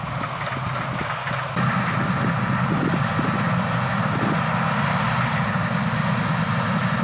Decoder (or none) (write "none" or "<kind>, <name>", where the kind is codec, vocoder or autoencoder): none